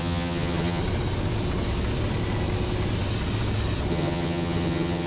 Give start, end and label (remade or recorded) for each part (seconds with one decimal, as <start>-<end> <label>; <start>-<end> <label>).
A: 0.0-0.8 remade; 0.8-3.9 recorded; 3.9-5.1 remade